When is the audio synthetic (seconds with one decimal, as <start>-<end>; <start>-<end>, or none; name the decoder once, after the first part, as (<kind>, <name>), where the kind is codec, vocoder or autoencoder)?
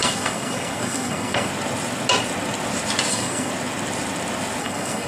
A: 0.0-1.5 (codec, SNAC); 3.1-3.5; 4.6-5.1